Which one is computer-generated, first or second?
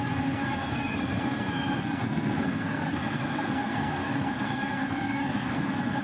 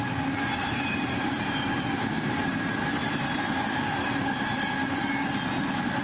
first